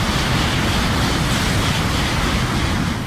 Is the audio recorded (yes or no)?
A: yes